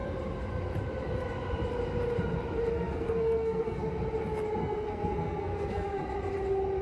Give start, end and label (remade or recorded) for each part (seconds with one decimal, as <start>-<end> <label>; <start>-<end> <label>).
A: 0.0-2.7 recorded; 2.7-4.0 remade; 4.0-4.6 recorded; 4.6-6.0 remade; 6.0-6.8 recorded